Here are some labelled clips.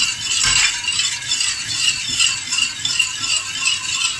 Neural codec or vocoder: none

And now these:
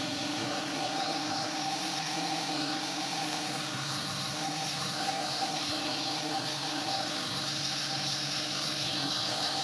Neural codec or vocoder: codec, SNAC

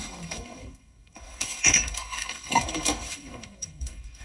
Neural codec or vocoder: codec, SNAC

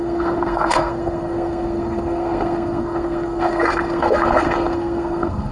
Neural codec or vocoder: codec, SNAC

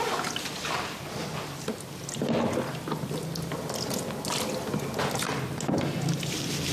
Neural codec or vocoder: none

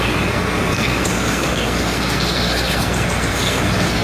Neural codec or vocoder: codec, SNAC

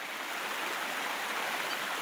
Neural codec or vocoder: none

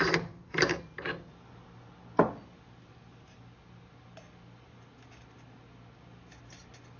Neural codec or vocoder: none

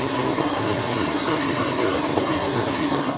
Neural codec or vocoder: codec, SNAC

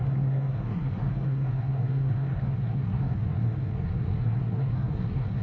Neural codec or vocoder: codec, SNAC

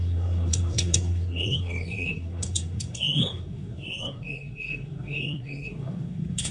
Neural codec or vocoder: codec, SNAC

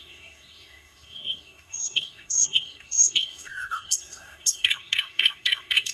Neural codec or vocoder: codec, SNAC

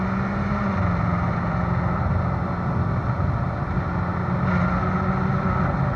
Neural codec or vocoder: none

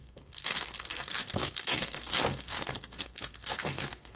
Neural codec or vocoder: codec, SNAC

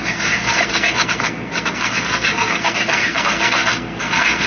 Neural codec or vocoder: codec, SNAC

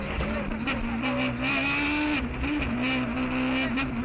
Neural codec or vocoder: none